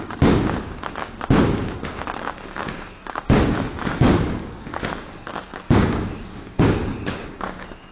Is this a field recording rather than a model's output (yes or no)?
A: no